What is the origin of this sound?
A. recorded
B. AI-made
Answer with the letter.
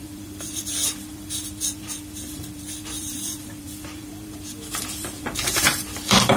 B